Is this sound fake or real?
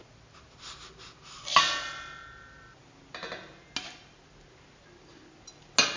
real